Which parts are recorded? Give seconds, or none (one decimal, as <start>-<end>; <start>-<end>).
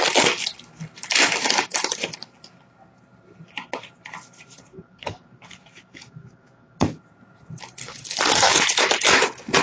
0.0-4.7; 7.0-7.8; 8.6-9.6